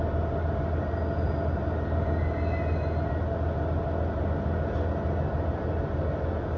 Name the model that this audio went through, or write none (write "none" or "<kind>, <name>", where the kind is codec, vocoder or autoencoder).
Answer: none